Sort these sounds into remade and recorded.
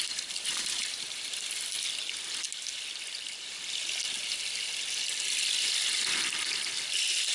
recorded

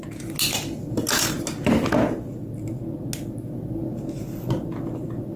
recorded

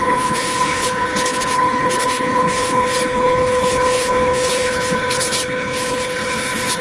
remade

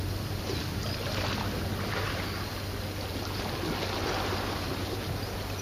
recorded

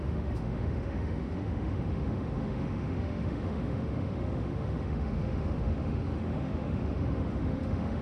remade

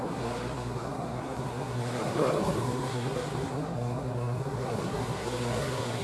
remade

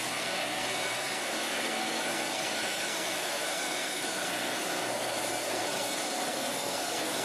remade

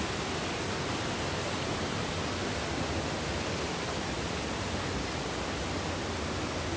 recorded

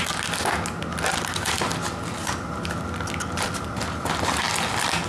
recorded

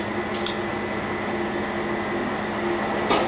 recorded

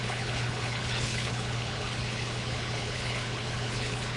remade